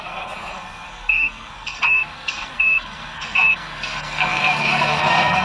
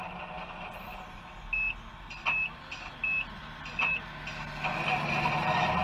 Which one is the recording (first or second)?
second